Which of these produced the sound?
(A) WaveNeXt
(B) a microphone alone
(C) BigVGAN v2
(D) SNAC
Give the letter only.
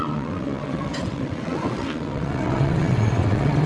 A